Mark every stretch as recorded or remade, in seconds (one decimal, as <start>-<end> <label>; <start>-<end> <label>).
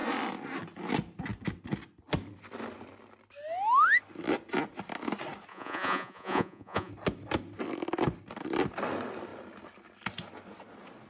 0.0-5.5 recorded; 5.5-6.9 remade; 6.9-11.1 recorded